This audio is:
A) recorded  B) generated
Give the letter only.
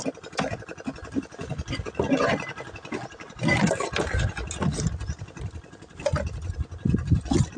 A